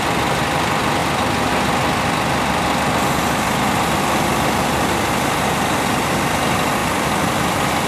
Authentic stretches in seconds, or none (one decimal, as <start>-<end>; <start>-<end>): 0.0-7.9